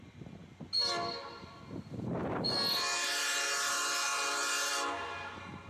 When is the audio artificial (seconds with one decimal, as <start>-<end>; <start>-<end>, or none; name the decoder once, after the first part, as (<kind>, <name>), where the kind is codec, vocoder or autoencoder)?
none